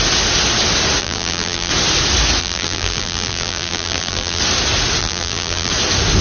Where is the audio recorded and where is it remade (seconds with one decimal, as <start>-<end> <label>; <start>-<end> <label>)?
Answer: 0.0-1.0 recorded; 1.0-1.7 remade; 1.7-2.4 recorded; 2.4-4.4 remade; 4.4-5.0 recorded; 5.0-5.7 remade; 5.7-6.2 recorded